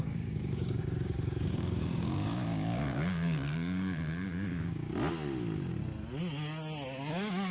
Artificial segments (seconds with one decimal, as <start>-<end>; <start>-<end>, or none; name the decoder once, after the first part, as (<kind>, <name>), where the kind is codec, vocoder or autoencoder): 0.0-4.8 (codec, DAC); 7.1-7.5

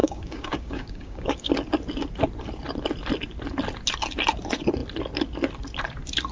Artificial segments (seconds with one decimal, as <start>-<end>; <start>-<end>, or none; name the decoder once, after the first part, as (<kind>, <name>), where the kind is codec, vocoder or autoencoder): 0.0-1.5 (codec, DAC)

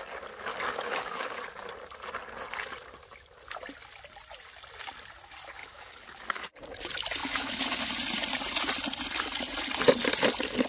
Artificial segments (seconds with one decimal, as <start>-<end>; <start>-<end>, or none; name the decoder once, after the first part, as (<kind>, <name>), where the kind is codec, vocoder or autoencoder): 0.5-1.7 (codec, DAC); 5.6-6.5; 7.2-7.8

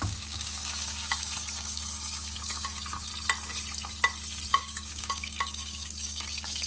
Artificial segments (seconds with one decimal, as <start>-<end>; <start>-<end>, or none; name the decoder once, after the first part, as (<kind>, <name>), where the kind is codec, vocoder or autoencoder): 0.0-3.1 (codec, DAC); 4.5-6.7

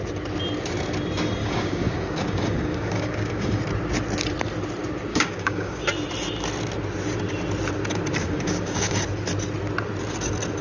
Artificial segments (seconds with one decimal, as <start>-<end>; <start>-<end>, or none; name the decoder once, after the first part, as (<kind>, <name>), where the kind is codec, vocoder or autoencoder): 1.4-3.6 (codec, DAC); 5.1-5.8; 8.2-9.0